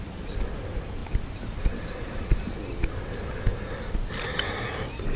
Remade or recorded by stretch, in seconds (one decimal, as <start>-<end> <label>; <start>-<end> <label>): 0.0-5.2 recorded